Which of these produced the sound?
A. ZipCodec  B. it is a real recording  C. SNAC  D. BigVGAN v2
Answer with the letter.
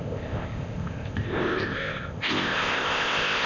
A